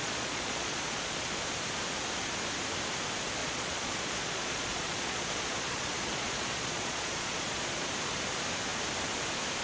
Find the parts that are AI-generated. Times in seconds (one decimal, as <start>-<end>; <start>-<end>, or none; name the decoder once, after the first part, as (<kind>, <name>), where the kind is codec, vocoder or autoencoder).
0.0-1.5 (vocoder, Vocos); 3.4-7.9